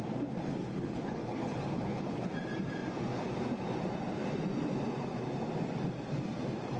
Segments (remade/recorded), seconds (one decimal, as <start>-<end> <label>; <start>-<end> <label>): 0.0-0.6 recorded; 0.6-2.3 remade; 2.3-6.8 recorded

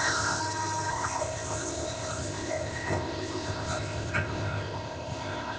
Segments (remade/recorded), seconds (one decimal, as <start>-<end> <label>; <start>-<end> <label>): 0.0-0.4 remade; 0.4-0.9 recorded; 0.9-5.6 remade

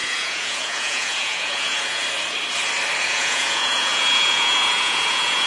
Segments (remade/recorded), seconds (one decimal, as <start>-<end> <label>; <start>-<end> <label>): 0.0-2.0 remade; 2.0-3.0 recorded; 3.0-5.5 remade

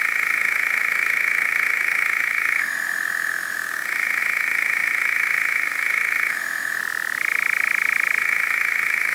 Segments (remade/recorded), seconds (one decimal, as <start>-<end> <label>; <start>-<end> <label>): 0.0-6.8 remade; 6.8-8.2 recorded; 8.2-9.1 remade

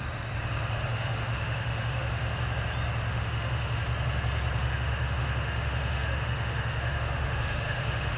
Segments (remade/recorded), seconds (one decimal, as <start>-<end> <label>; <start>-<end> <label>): 0.0-0.9 recorded; 0.9-2.3 remade; 2.3-3.1 recorded; 3.1-3.8 remade; 3.8-4.6 recorded; 4.6-8.2 remade